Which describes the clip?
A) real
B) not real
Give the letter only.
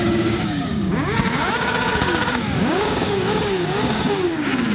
B